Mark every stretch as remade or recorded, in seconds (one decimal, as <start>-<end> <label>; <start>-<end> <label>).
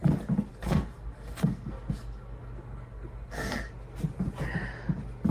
0.0-0.5 recorded; 0.5-3.7 remade; 3.7-5.3 recorded